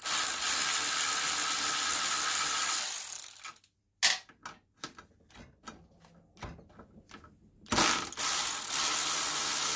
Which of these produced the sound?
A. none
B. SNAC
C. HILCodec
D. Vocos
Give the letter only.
A